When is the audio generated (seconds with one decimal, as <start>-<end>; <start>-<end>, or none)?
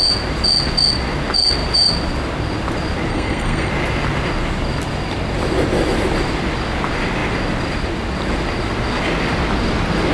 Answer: 3.1-3.7